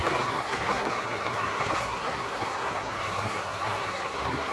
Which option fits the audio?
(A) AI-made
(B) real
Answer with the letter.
A